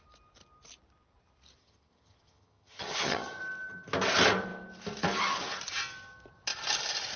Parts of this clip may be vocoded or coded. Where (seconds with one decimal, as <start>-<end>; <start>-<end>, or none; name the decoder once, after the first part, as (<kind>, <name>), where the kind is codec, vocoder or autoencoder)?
1.6-3.4 (vocoder, HiFi-GAN)